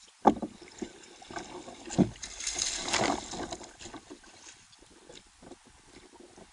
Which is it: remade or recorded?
recorded